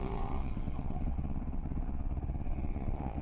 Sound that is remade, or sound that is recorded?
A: remade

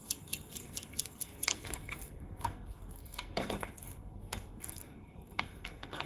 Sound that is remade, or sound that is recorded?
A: remade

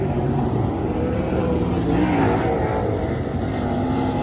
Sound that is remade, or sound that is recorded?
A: remade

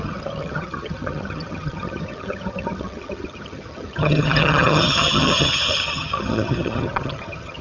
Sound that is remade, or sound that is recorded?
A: remade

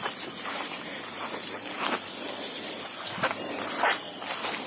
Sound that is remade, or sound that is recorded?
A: recorded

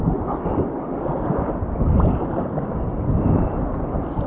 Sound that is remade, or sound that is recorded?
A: recorded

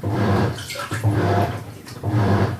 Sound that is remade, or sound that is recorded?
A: remade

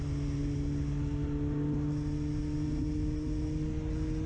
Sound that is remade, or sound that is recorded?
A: recorded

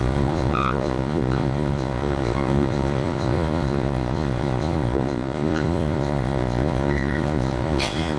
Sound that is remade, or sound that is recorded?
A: remade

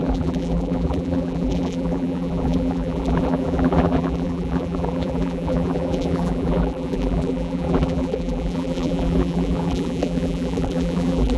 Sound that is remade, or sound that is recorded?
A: remade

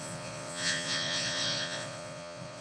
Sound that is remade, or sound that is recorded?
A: remade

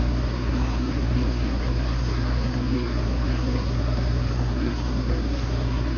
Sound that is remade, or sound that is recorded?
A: remade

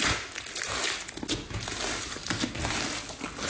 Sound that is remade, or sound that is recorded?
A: recorded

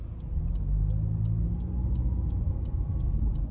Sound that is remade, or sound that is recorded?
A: recorded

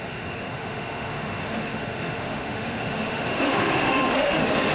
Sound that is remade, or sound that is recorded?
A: remade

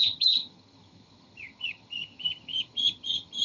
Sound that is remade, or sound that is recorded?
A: remade